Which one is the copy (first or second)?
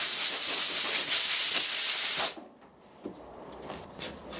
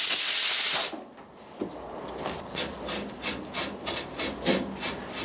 first